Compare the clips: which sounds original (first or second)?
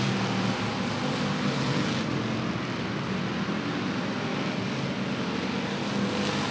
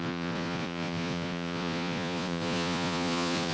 first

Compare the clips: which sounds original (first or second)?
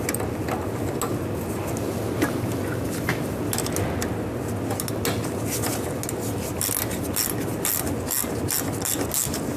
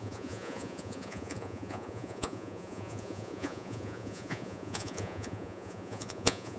first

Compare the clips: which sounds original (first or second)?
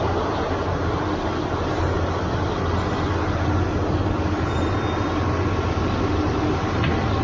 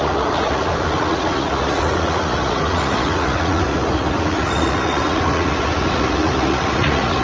first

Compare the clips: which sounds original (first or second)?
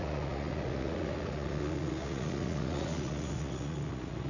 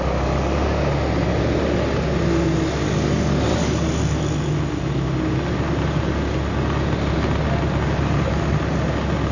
second